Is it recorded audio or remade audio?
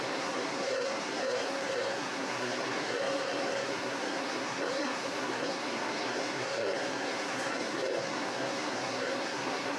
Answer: remade